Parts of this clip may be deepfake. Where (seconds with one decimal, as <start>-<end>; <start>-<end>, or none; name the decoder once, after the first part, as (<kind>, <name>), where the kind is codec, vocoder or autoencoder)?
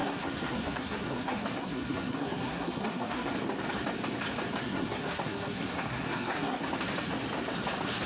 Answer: 0.0-3.3 (codec, SNAC); 4.6-6.6